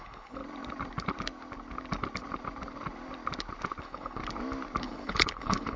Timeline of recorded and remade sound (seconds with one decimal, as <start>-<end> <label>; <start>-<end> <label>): 0.0-0.4 remade; 0.4-3.8 recorded; 3.8-4.2 remade; 4.2-4.8 recorded; 4.8-5.8 remade